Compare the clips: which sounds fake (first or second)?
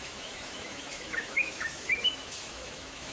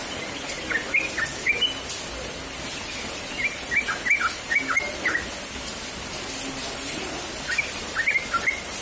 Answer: first